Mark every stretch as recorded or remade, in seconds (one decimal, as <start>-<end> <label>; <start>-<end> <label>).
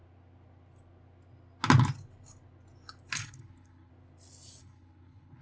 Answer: 0.0-3.2 recorded; 3.2-3.9 remade; 3.9-4.6 recorded; 4.6-5.4 remade